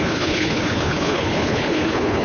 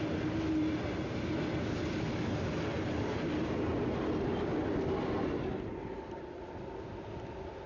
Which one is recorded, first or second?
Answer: second